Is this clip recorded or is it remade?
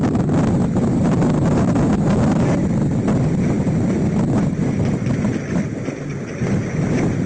recorded